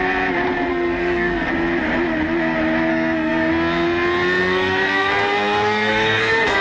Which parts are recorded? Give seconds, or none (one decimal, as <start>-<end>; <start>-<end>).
0.0-0.7; 1.5-2.9; 3.5-4.4